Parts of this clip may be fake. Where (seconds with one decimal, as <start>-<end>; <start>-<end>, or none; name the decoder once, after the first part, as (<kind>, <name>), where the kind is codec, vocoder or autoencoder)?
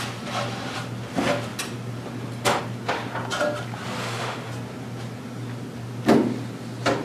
4.0-4.5 (autoencoder, DAC-VAE)